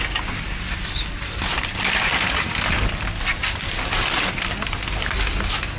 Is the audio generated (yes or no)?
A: no